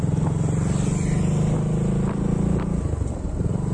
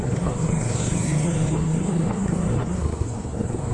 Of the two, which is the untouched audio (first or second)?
first